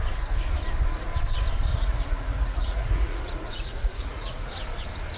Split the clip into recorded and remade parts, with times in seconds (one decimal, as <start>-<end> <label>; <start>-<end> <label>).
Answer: 0.0-1.7 recorded; 1.7-4.5 remade; 4.5-5.2 recorded